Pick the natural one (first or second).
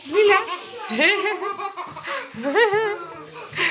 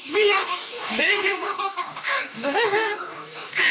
first